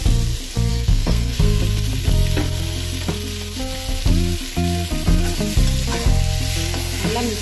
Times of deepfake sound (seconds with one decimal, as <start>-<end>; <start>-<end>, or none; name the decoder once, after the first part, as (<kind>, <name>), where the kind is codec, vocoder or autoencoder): 0.7-1.6 (codec, SNAC)